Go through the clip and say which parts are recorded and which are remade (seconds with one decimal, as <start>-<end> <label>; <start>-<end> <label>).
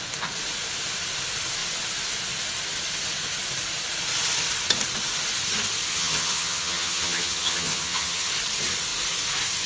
0.0-5.9 recorded; 5.9-8.3 remade; 8.3-9.7 recorded